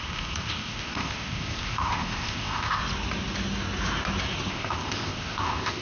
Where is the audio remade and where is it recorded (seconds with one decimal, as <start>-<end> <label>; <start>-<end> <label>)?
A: 0.0-2.8 remade; 2.8-4.5 recorded; 4.5-5.8 remade